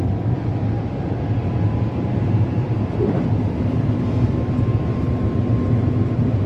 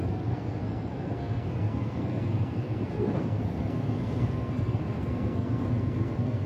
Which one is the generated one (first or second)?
second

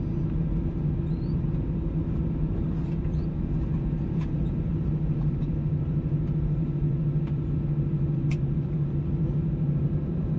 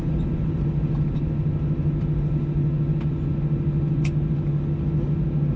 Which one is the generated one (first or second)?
first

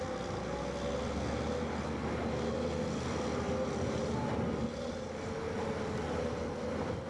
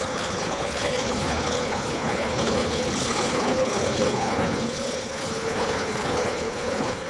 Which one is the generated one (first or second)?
second